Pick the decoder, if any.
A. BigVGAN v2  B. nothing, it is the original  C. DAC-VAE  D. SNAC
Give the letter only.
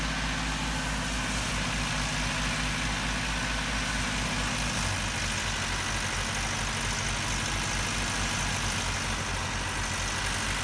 B